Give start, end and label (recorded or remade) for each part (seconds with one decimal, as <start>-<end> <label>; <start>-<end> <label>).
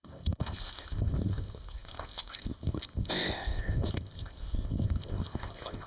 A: 0.0-5.9 remade